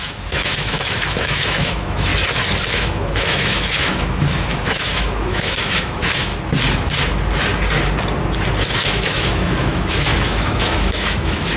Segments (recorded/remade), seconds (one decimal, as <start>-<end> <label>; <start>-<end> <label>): 0.0-2.1 remade; 2.1-2.7 recorded; 2.7-6.3 remade; 6.3-8.9 recorded; 8.9-11.6 remade